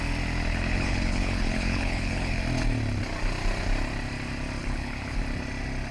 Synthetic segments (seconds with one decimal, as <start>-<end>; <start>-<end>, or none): 0.5-2.4; 4.6-5.2